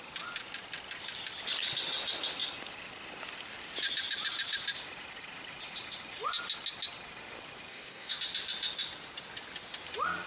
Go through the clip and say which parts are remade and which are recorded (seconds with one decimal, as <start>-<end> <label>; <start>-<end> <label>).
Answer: 0.0-7.7 recorded; 7.7-8.2 remade; 8.2-10.3 recorded